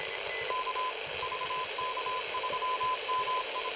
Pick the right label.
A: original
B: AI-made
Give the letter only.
A